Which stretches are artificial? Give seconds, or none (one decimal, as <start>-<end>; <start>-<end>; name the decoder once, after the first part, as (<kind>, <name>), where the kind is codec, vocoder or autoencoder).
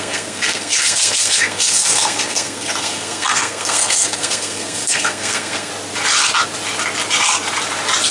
0.0-5.7 (codec, SNAC)